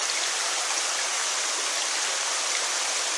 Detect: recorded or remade recorded